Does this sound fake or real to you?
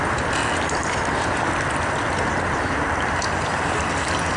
real